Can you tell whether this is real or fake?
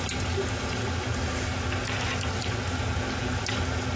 real